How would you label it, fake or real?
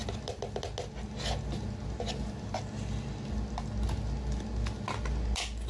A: real